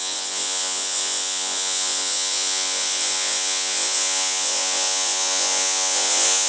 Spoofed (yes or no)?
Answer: yes